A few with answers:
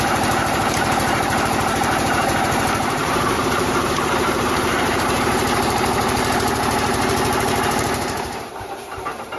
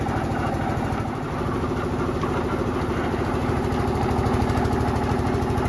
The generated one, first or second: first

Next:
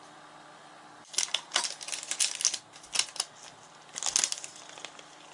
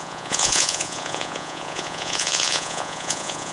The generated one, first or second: second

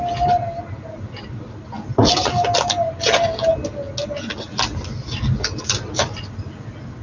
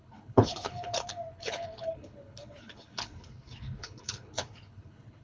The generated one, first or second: second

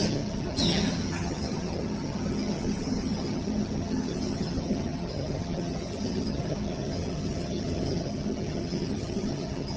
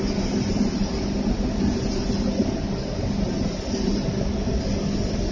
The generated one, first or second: first